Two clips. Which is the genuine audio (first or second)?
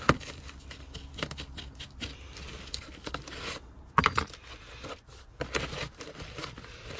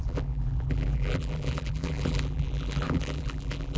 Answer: first